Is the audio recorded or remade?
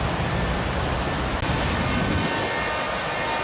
recorded